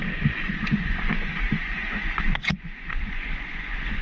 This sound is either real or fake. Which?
fake